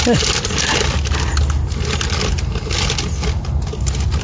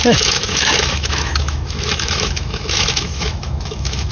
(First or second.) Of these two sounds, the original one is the first